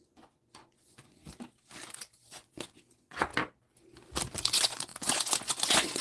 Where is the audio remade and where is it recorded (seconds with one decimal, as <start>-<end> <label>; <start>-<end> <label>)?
0.0-1.2 remade; 1.2-2.1 recorded; 2.1-3.3 remade; 3.3-4.5 recorded; 4.5-6.0 remade